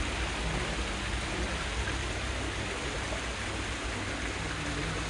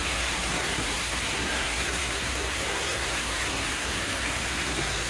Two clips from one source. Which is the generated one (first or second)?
second